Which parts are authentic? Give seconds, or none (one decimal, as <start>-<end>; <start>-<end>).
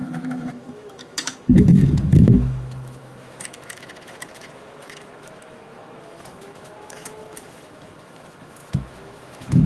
none